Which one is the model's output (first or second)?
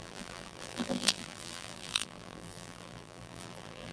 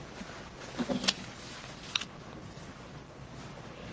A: first